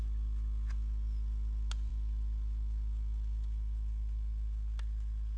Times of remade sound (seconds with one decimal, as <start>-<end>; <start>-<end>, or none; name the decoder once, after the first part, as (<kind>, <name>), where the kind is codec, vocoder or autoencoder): none